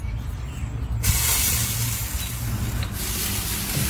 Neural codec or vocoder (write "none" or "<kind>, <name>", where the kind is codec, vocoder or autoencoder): none